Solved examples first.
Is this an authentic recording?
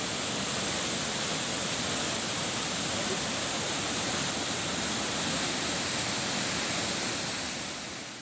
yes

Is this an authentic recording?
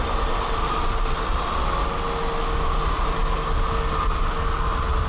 yes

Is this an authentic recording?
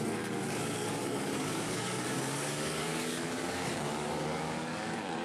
no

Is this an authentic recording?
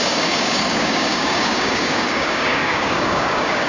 no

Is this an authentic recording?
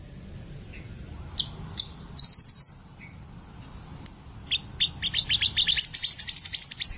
yes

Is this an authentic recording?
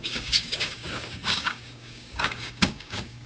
no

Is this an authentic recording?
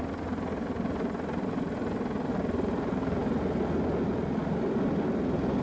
yes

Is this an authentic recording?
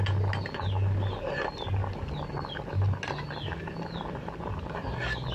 yes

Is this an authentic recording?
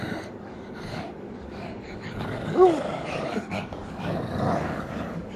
no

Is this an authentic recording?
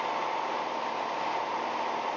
yes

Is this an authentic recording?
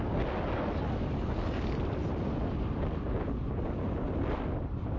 yes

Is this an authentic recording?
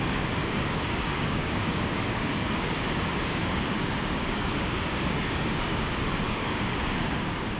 no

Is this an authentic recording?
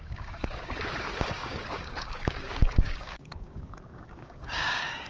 no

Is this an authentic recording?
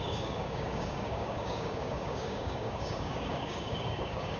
no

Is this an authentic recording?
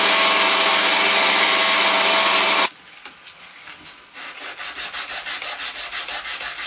yes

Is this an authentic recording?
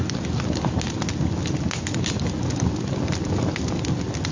yes